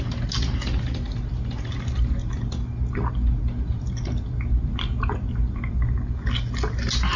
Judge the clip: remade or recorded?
recorded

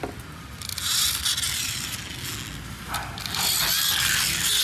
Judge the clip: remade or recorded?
recorded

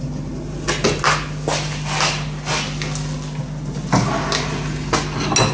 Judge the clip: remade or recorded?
recorded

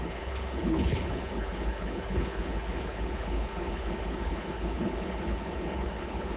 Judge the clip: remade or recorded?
remade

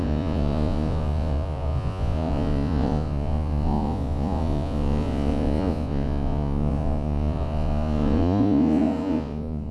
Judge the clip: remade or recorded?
remade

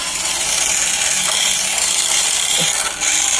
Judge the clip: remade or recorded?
recorded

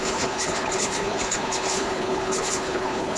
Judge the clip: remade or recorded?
remade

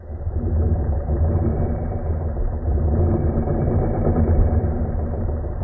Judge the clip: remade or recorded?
remade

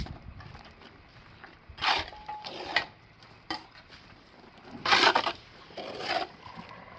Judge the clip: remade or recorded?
remade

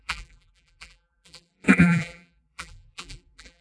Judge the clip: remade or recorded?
remade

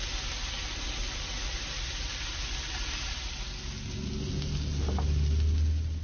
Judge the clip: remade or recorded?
recorded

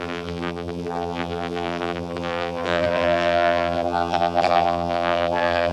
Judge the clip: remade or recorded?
remade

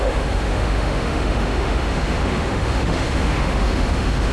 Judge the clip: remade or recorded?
remade